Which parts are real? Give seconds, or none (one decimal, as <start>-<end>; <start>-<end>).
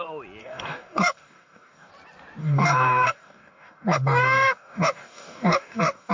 0.0-0.4; 1.9-2.4